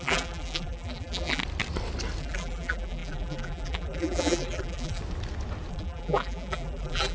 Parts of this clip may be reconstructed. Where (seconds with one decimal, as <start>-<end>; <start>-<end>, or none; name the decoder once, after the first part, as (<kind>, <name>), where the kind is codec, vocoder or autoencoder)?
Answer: 0.0-1.4 (vocoder, BigVGAN v2); 2.2-5.0; 5.7-7.1